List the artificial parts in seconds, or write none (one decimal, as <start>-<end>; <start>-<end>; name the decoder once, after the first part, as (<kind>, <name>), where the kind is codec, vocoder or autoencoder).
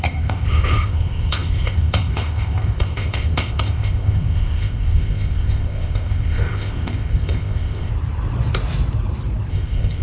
0.0-7.9 (codec, ZipCodec); 9.5-10.0